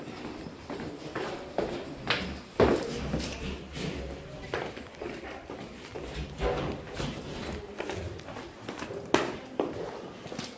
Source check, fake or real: real